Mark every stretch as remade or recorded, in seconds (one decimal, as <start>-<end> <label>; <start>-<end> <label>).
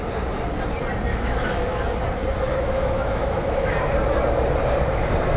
0.0-1.1 recorded; 1.1-1.8 remade; 1.8-2.5 recorded; 2.5-3.7 remade; 3.7-5.4 recorded